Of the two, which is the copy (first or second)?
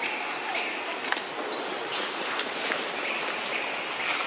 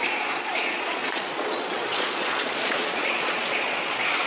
second